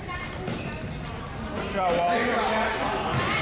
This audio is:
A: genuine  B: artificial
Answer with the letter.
A